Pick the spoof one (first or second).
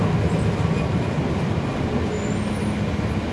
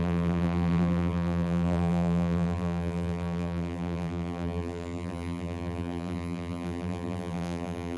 second